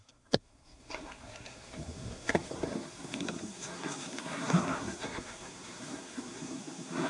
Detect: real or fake fake